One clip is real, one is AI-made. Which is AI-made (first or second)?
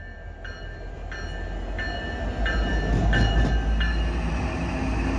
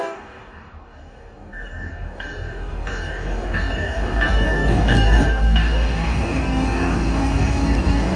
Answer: second